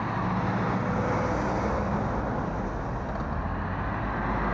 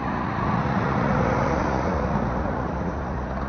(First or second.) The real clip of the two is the first